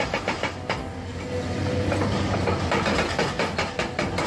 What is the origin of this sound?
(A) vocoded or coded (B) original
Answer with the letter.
B